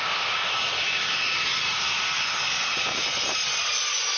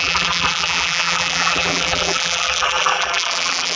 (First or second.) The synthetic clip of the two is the second